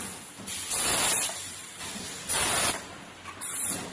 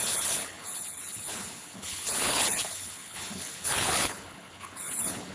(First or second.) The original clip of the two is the first